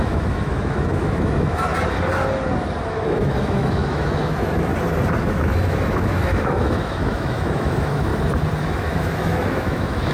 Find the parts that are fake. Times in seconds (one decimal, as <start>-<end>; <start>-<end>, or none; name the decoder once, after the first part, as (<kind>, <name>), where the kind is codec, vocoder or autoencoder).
0.0-1.7 (autoencoder, DAC-VAE); 2.9-4.7; 5.2-8.1; 8.6-10.1